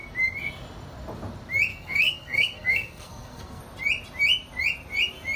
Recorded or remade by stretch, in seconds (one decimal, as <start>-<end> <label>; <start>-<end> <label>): 0.0-1.7 recorded; 1.7-3.6 remade; 3.6-5.4 recorded